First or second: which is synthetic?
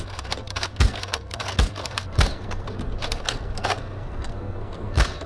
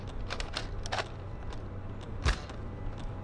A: first